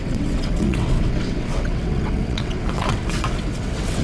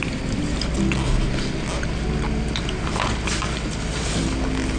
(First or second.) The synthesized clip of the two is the first